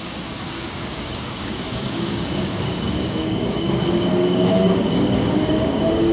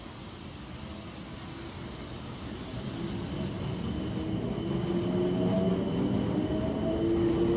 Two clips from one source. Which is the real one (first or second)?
second